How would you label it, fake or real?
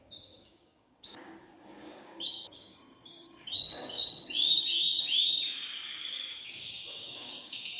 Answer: fake